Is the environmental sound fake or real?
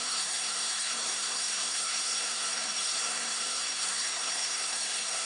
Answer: fake